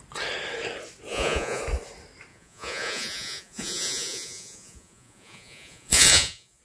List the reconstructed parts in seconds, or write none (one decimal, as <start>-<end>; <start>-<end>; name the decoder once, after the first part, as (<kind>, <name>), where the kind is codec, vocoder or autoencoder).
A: 1.1-1.6 (vocoder, Vocos); 2.3-6.6